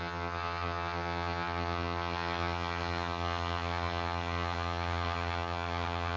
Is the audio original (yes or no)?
no